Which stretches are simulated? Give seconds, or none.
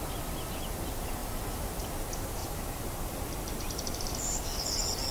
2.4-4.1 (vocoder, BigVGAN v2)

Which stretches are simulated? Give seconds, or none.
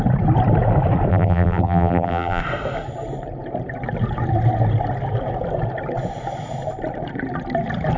1.1-2.4 (vocoder, BigVGAN v2)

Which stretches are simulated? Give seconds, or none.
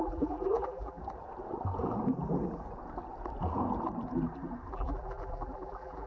0.0-1.0 (vocoder, BigVGAN v2); 4.7-6.1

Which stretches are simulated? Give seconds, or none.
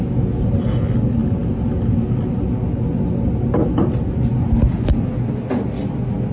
none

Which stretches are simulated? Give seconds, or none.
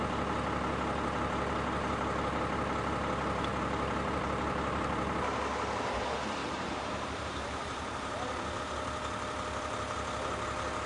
6.4-8.6 (vocoder, BigVGAN v2)